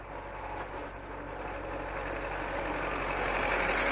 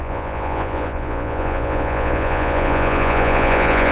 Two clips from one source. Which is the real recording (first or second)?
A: first